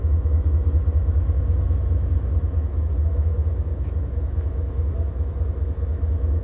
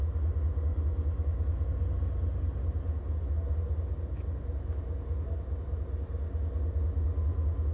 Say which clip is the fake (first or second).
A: first